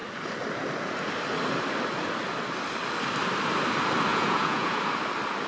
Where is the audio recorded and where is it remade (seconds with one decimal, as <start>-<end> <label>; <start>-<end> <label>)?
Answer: 0.0-4.1 recorded; 4.1-4.8 remade; 4.8-5.5 recorded